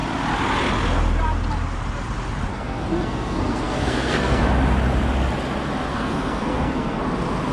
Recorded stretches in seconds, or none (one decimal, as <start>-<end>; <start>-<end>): 0.0-2.5; 4.4-5.9; 7.0-7.5